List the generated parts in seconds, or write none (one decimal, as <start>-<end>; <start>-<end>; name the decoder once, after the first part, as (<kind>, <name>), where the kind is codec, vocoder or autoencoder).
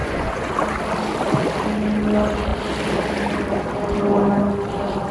0.0-0.5 (vocoder, Vocos)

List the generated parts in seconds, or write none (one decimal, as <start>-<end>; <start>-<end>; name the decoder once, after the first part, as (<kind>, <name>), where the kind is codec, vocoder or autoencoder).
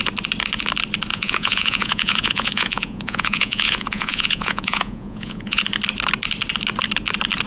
1.1-5.6 (vocoder, Vocos)